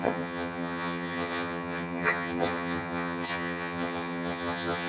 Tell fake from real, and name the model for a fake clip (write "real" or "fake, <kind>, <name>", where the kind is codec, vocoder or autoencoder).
fake, vocoder, HiFi-GAN